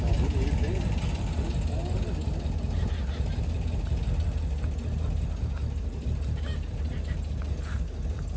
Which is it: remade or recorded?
recorded